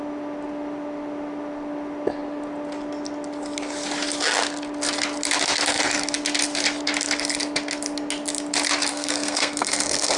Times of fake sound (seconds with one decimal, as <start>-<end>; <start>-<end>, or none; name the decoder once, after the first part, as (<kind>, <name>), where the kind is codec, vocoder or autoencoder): 8.9-10.2 (codec, SNAC)